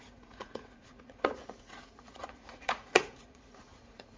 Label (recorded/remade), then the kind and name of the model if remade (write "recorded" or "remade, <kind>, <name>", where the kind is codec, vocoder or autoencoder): remade, vocoder, Vocos